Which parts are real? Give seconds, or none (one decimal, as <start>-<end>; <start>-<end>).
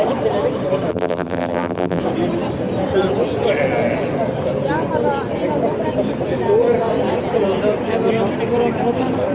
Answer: 0.0-0.9; 2.0-9.3